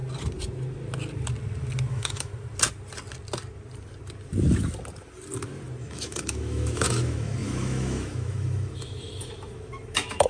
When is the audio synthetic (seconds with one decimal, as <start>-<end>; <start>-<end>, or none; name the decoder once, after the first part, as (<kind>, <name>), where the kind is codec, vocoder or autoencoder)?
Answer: 1.9-2.3 (autoencoder, DAC-VAE); 5.8-10.3